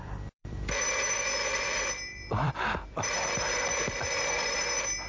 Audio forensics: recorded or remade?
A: remade